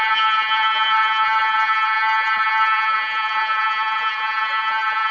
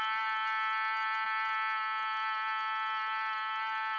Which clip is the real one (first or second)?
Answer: second